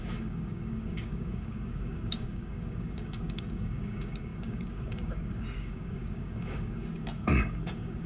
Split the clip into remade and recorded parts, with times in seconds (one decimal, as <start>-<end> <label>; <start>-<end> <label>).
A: 0.0-8.1 remade